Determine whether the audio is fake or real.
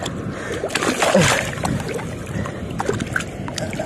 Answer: real